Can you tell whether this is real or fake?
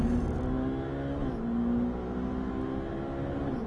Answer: real